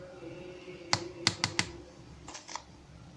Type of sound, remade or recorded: recorded